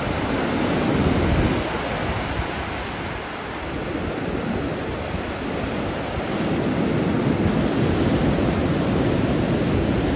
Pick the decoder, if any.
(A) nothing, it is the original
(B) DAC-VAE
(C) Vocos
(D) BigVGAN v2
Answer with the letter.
A